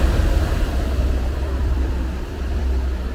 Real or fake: fake